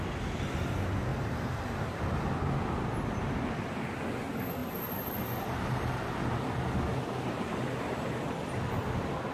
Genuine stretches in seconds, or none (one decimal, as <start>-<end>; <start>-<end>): 0.0-1.1; 2.0-4.6; 6.2-9.3

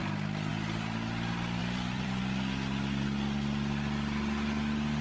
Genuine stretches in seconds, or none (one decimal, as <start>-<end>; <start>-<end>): 0.0-1.6; 2.2-5.0

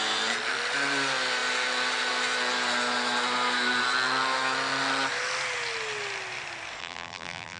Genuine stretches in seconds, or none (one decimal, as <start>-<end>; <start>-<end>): 0.0-6.8

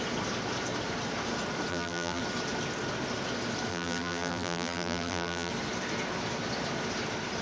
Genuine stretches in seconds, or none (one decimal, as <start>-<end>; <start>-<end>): 0.0-1.7; 2.2-3.7; 5.5-7.4

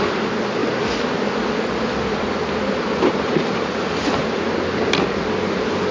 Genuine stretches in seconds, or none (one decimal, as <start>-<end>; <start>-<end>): 0.0-0.6; 4.1-5.9